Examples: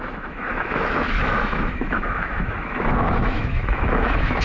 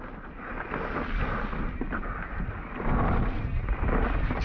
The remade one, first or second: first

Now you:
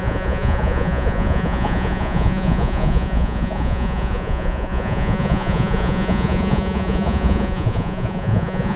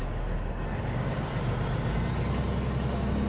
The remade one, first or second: first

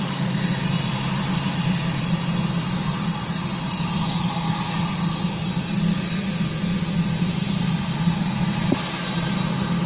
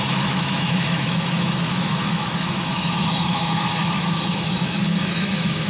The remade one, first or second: second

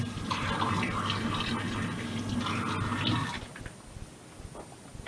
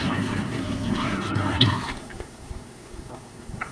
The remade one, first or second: second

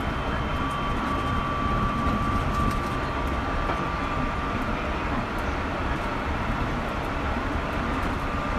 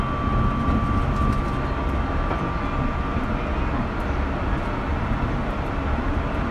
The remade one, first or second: first